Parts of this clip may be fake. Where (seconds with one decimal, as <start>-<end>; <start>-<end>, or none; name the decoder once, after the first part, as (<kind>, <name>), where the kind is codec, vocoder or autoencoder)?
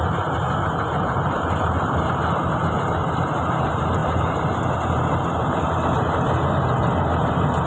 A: none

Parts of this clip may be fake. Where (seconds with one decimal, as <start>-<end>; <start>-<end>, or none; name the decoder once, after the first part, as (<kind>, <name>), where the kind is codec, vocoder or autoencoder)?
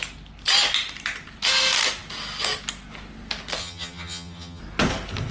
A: 3.6-4.6 (vocoder, HiFi-GAN)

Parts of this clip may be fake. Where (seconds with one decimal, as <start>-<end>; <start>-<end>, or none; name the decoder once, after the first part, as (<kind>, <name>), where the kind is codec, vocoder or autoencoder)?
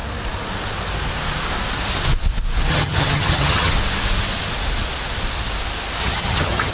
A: 2.7-3.7 (vocoder, HiFi-GAN); 6.0-6.7